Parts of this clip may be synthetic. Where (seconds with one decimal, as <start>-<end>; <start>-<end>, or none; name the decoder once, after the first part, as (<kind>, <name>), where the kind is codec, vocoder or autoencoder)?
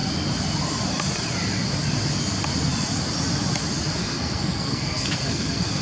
4.0-5.8 (codec, SNAC)